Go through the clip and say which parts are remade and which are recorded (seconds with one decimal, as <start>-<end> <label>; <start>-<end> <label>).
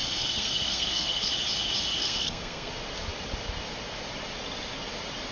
0.0-1.3 remade; 1.3-2.0 recorded; 2.0-2.7 remade; 2.7-5.3 recorded